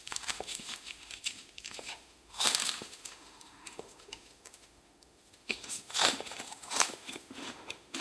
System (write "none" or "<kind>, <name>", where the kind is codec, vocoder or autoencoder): autoencoder, DAC-VAE